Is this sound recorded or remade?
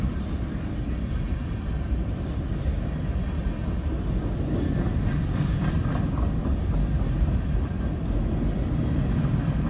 recorded